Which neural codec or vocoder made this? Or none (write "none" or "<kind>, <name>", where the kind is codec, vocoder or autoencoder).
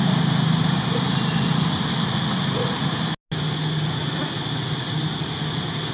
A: none